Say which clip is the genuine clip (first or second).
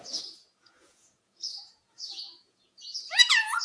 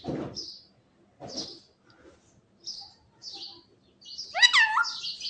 second